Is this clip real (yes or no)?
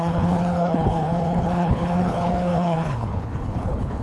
no